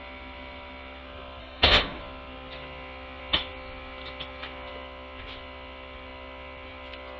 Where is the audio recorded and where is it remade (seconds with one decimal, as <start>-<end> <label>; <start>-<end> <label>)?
0.0-1.4 recorded; 1.4-2.0 remade; 2.0-7.2 recorded